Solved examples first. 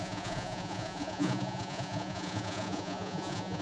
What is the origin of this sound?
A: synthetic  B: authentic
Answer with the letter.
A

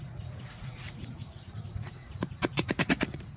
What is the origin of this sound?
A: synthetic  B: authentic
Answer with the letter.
A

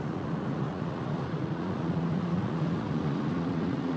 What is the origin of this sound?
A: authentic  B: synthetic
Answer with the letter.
B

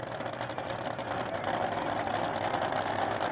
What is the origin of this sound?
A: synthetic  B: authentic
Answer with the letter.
B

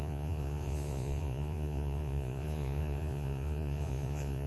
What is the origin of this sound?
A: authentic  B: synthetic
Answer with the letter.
B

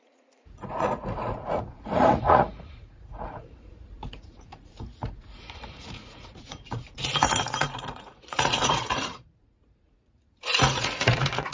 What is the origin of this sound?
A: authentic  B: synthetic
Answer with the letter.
B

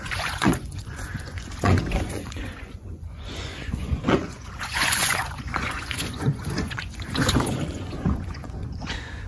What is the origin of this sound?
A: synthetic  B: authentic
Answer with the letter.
A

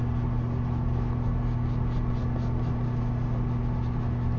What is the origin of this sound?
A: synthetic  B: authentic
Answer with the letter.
B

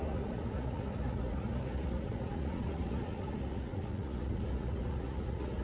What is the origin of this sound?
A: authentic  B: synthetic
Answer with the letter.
B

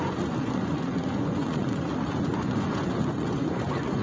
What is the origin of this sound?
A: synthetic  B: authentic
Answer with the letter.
A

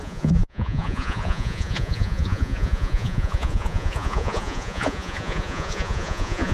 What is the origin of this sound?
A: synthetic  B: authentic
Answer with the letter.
A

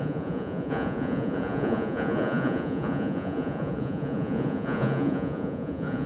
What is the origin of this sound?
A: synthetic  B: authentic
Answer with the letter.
A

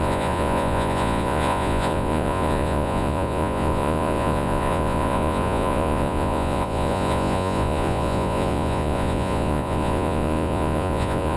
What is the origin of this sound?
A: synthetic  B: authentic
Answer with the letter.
A